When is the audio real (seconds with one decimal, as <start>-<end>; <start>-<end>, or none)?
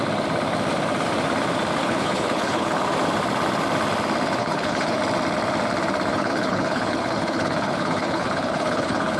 0.0-1.8; 2.8-4.4; 5.0-6.1